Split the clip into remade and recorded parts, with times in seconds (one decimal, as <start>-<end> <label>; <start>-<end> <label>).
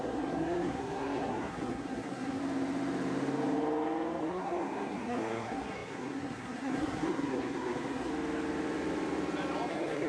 0.0-2.4 remade; 2.4-4.2 recorded; 4.2-8.1 remade; 8.1-9.7 recorded; 9.7-10.1 remade